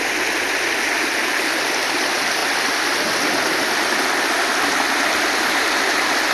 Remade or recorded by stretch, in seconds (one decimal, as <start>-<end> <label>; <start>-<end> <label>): 0.0-6.3 recorded